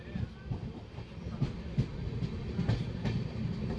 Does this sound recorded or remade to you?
recorded